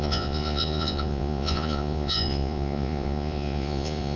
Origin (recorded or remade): remade